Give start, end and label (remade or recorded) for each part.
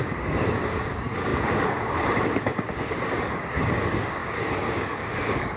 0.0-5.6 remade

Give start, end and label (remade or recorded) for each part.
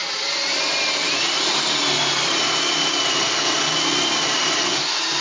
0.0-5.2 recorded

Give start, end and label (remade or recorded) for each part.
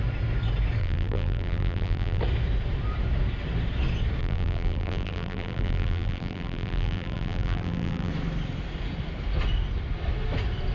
0.0-0.8 recorded; 0.8-2.2 remade; 2.2-4.2 recorded; 4.2-8.1 remade; 8.1-10.7 recorded